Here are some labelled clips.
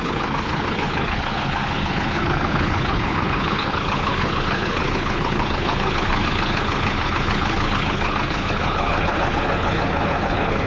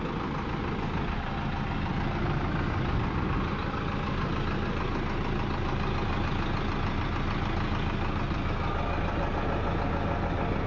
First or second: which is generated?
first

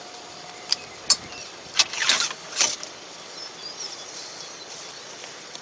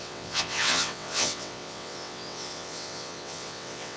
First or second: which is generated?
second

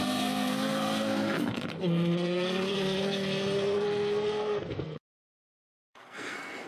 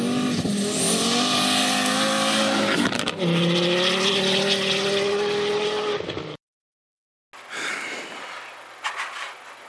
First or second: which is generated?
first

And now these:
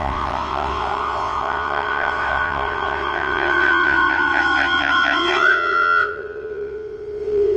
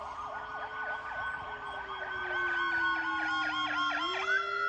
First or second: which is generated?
first